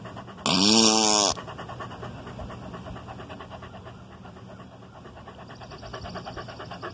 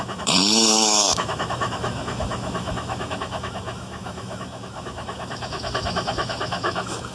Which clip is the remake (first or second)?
second